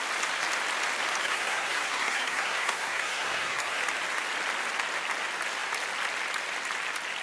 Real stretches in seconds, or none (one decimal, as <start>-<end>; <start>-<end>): 0.0-1.2; 3.8-7.2